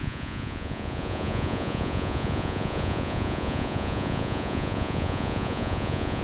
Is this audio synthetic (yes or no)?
yes